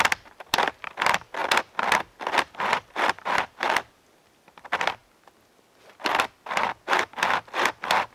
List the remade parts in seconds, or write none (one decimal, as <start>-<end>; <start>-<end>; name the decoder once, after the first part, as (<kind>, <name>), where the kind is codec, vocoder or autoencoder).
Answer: 0.0-1.4 (vocoder, BigVGAN v2); 2.0-5.0